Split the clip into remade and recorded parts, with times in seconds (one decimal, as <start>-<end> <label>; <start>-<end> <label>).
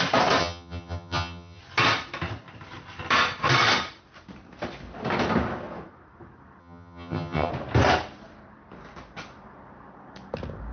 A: 0.0-0.4 recorded; 0.4-1.6 remade; 1.6-6.6 recorded; 6.6-7.5 remade; 7.5-10.7 recorded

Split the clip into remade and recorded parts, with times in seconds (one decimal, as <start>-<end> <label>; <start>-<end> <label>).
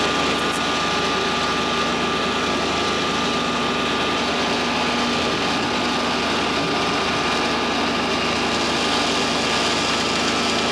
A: 0.0-1.9 recorded; 1.9-4.0 remade; 4.0-10.7 recorded